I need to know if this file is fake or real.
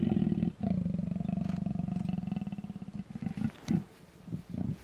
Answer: real